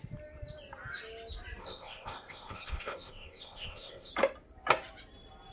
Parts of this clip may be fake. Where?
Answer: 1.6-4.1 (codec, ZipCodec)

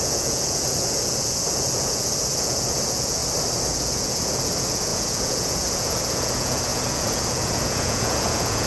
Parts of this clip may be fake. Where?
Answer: 0.0-3.2 (vocoder, Vocos); 3.7-8.7

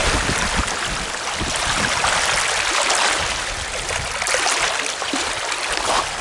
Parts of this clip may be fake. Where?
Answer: none

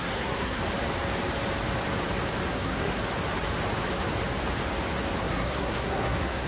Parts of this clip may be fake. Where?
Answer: 0.0-0.6 (codec, SNAC); 2.5-3.0; 5.2-6.5

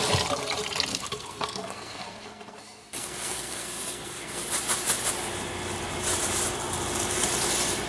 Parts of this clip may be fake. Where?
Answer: 0.9-4.4 (codec, SNAC)

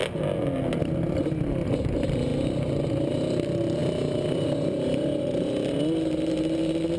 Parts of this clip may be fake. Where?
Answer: none

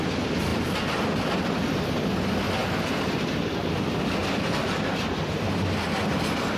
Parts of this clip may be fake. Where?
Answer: 4.2-4.9 (vocoder, BigVGAN v2)